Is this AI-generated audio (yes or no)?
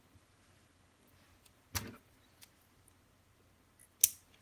no